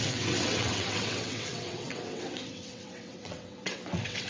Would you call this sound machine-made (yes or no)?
yes